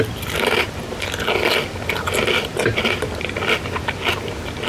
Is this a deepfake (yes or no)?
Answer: no